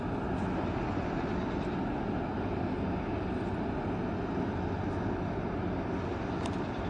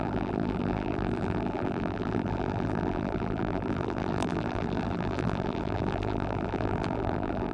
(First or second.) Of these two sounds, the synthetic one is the second